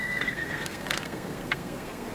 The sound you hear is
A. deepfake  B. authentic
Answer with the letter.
A